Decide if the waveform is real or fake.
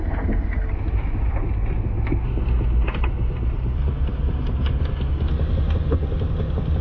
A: real